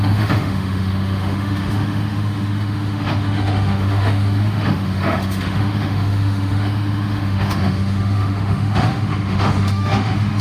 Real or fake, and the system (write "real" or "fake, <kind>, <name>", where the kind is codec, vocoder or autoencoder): fake, autoencoder, DAC-VAE